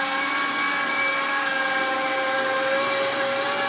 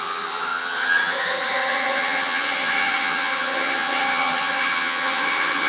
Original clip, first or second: first